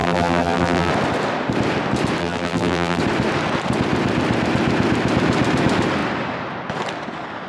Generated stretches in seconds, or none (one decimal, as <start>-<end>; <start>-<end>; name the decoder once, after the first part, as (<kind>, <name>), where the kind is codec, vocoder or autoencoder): 0.0-0.9 (vocoder, BigVGAN v2); 2.2-3.0